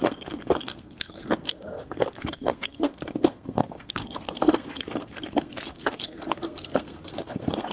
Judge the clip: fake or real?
fake